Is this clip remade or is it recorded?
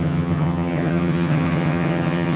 remade